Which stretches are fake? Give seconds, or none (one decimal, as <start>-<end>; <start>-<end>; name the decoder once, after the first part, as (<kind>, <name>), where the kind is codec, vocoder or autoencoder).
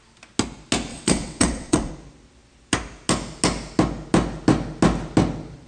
0.9-1.9 (vocoder, WaveNeXt)